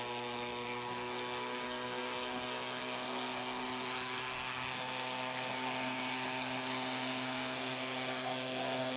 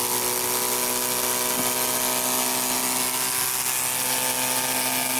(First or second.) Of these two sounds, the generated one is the first